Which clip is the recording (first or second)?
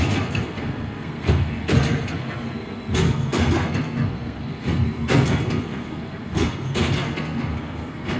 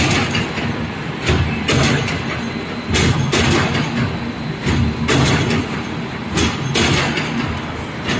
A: second